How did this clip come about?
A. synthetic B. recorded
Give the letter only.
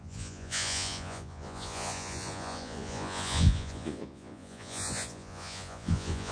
A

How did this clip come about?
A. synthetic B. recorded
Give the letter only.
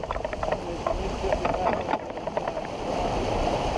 B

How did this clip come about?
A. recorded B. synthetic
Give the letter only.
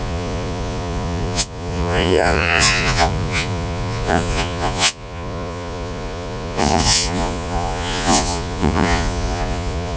B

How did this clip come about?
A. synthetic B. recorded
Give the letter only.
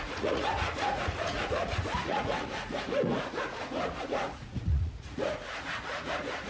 A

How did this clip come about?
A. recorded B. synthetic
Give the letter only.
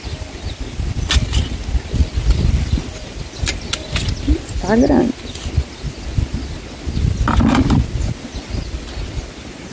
A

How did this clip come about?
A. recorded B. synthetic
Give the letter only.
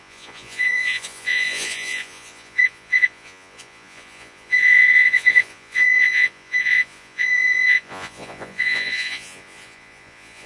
B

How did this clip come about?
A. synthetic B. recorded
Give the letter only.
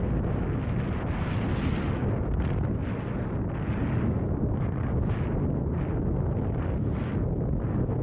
B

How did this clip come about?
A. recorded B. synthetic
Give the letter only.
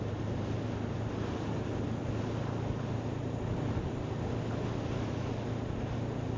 A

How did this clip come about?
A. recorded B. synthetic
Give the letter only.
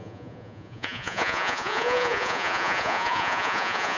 B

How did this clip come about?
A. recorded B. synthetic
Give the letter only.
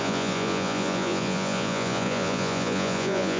B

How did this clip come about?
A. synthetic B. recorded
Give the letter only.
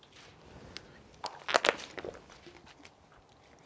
B